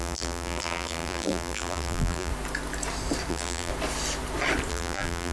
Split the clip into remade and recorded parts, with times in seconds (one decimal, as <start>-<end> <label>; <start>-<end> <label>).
0.0-2.3 remade; 2.3-3.3 recorded; 3.3-3.7 remade; 3.7-4.7 recorded; 4.7-5.3 remade